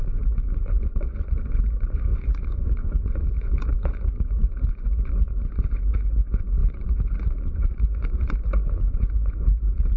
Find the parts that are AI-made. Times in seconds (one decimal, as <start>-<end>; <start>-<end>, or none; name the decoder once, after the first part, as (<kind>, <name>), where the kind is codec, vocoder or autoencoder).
0.0-10.0 (vocoder, Vocos)